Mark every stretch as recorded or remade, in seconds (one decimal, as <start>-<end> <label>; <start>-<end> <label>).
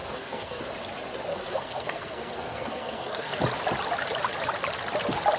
0.0-0.6 remade; 0.6-1.3 recorded; 1.3-3.4 remade; 3.4-5.4 recorded